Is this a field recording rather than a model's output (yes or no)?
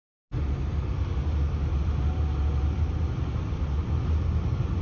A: yes